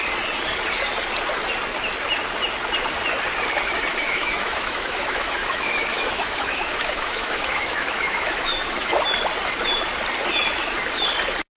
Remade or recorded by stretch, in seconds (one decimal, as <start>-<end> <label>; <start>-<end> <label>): 0.0-3.9 recorded; 3.9-8.9 remade; 8.9-11.6 recorded